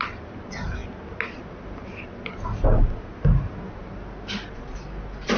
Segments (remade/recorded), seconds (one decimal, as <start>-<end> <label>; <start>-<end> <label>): 0.0-5.4 recorded